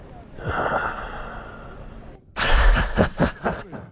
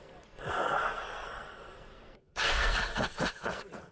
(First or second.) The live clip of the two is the first